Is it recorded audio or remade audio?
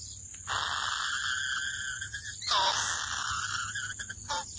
recorded